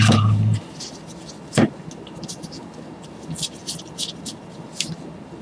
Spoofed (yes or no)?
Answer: no